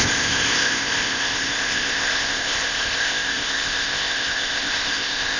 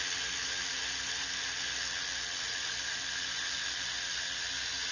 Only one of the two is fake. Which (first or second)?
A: first